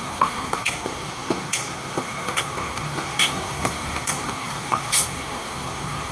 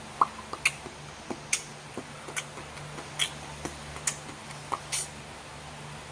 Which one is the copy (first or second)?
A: first